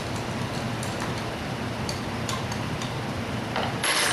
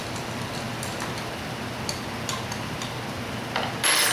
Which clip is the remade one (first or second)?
first